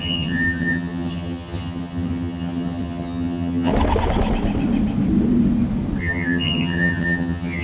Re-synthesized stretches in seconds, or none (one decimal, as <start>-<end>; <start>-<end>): 0.0-3.7; 6.0-7.6